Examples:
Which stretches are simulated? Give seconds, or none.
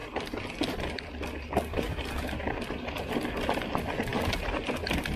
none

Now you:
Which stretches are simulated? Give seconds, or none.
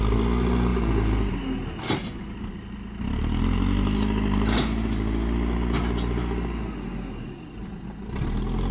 none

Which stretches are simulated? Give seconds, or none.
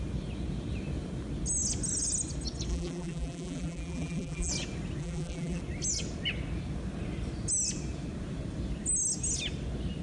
2.7-4.5 (vocoder, BigVGAN v2); 5.0-5.6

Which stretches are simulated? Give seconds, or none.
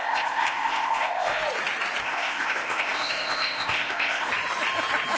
0.0-1.4 (codec, ZipCodec); 2.0-4.3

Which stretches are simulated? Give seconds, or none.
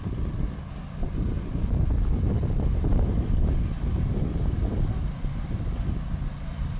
none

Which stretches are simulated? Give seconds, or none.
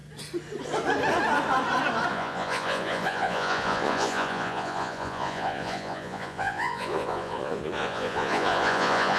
2.1-9.2 (vocoder, Vocos)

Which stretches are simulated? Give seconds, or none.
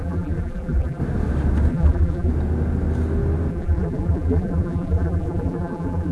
0.0-1.0 (vocoder, BigVGAN v2); 1.7-2.3; 3.5-6.1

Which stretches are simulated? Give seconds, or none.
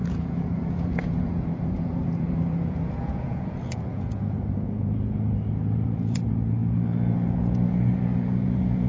0.0-8.9 (vocoder, Vocos)